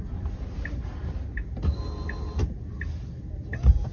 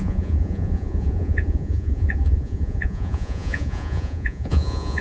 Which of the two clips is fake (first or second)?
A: second